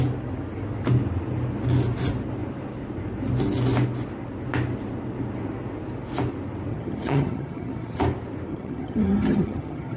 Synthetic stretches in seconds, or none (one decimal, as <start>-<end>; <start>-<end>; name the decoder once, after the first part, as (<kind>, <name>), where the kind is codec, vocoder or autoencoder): 6.7-8.0 (vocoder, HiFi-GAN); 8.5-10.0